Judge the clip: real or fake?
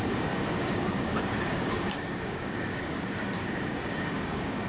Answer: fake